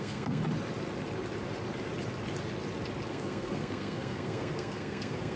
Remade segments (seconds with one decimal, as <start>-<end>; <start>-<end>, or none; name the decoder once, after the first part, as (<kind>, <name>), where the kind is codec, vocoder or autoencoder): 0.0-0.4 (codec, SNAC); 3.1-5.4